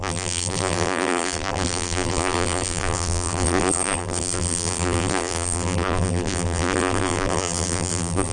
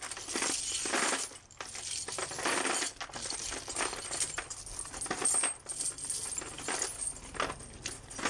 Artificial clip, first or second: first